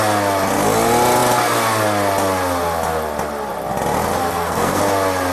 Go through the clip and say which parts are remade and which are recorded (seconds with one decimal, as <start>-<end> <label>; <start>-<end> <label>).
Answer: 0.0-4.2 recorded; 4.2-4.8 remade; 4.8-5.3 recorded